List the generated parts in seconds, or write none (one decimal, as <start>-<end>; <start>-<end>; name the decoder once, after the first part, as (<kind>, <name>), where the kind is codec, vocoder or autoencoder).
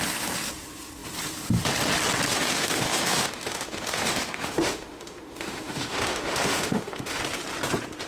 2.3-7.2 (autoencoder, DAC-VAE)